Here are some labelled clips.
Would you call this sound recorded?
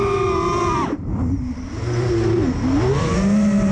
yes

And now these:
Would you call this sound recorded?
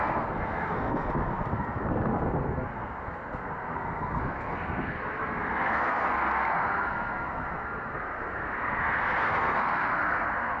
no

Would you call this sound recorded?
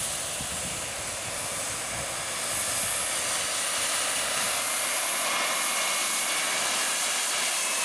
yes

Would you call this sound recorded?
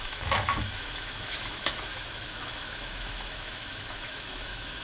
no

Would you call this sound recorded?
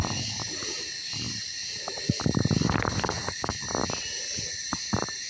yes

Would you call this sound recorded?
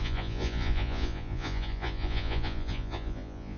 no